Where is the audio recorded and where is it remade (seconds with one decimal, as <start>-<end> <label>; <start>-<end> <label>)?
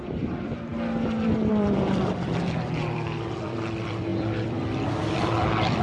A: 0.0-5.8 remade